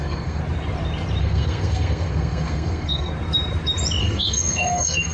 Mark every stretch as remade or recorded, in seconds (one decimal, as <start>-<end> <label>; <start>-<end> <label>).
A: 0.0-0.4 remade; 0.4-1.2 recorded; 1.2-3.1 remade; 3.1-4.0 recorded; 4.0-5.1 remade